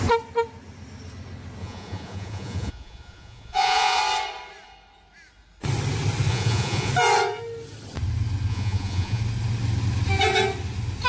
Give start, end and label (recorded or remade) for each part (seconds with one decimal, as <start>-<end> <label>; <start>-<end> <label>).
0.0-1.6 recorded; 1.6-4.0 remade; 4.0-6.3 recorded; 6.3-6.9 remade; 6.9-8.5 recorded; 8.5-9.2 remade; 9.2-11.1 recorded